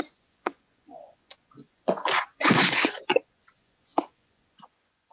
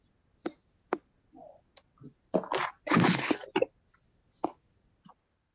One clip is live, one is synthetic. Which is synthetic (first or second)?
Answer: first